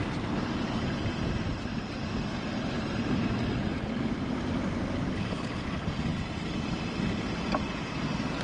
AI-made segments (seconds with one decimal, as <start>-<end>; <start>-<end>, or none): none